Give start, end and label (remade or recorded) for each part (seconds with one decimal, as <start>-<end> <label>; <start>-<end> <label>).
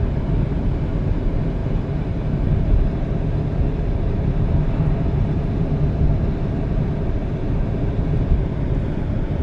0.0-9.4 remade